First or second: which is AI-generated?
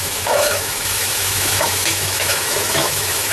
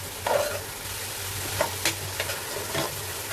first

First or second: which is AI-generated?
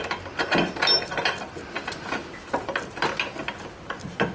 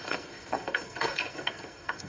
second